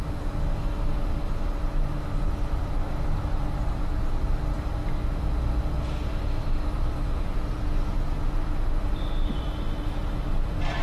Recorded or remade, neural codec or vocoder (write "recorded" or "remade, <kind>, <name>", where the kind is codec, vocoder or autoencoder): recorded